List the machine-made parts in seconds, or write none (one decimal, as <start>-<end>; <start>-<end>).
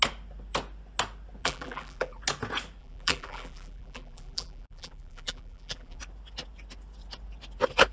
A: 1.4-2.2; 2.8-6.0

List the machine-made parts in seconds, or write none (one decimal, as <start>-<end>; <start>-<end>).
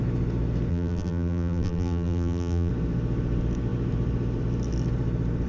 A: 0.7-2.7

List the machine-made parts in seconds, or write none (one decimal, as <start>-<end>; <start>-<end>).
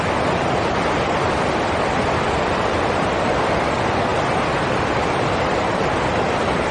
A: none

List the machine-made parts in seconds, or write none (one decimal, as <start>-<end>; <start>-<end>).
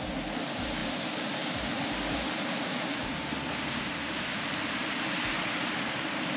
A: none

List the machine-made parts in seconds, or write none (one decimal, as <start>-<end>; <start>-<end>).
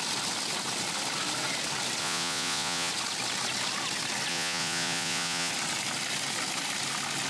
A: 2.0-2.9; 4.3-5.5